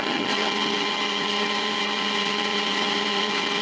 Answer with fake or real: fake